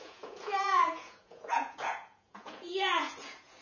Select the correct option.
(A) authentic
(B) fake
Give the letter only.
B